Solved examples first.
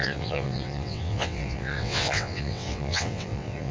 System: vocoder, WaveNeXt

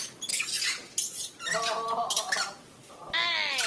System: none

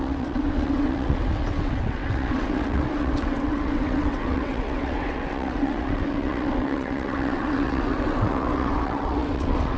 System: vocoder, WaveNeXt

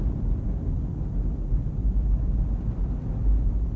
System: none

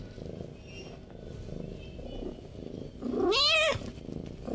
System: none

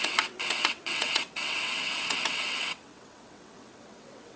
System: vocoder, WaveNeXt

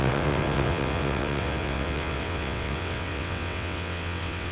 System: vocoder, WaveNeXt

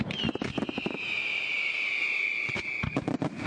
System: none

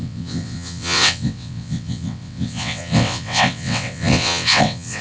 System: vocoder, WaveNeXt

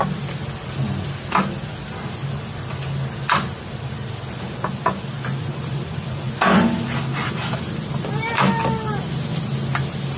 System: none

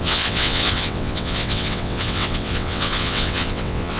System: vocoder, WaveNeXt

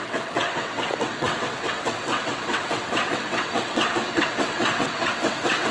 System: vocoder, WaveNeXt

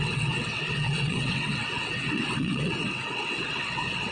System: vocoder, WaveNeXt